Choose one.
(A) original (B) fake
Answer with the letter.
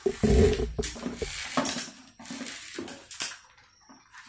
A